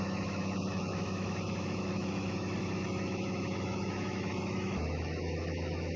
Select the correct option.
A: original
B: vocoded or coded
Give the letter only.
B